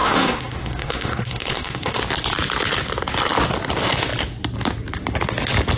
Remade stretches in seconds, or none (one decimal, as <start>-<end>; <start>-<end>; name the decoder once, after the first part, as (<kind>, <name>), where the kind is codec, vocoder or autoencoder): 0.0-2.0 (codec, SNAC)